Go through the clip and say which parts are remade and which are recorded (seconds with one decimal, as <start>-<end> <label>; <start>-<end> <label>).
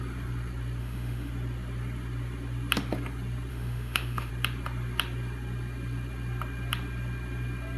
0.0-0.8 recorded; 0.8-1.3 remade; 1.3-3.5 recorded; 3.5-4.3 remade; 4.3-7.8 recorded